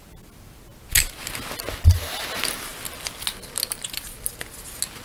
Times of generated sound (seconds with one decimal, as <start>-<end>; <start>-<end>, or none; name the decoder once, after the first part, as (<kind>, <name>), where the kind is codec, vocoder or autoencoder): none